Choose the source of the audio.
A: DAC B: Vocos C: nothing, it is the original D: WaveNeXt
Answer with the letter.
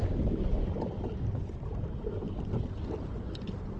C